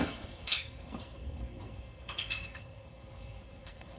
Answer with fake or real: fake